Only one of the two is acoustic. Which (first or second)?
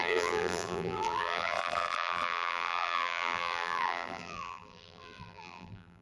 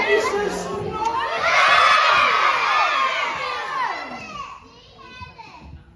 second